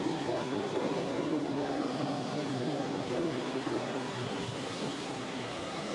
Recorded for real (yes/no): no